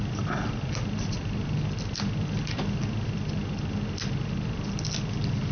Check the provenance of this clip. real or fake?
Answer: real